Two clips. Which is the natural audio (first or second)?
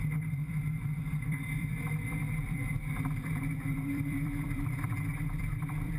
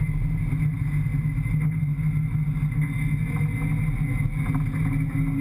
second